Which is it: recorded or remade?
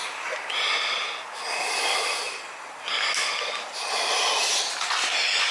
recorded